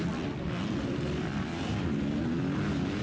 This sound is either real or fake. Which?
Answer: real